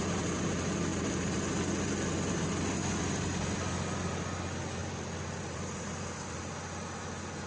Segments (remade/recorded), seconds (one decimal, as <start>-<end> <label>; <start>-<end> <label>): 0.0-0.5 remade; 0.5-0.9 recorded; 0.9-1.4 remade; 1.4-4.8 recorded; 4.8-6.4 remade; 6.4-7.5 recorded